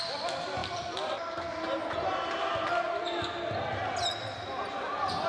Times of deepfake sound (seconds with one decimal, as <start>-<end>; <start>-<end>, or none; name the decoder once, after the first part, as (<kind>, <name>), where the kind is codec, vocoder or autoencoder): none